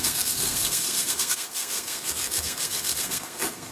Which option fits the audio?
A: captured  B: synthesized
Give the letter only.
B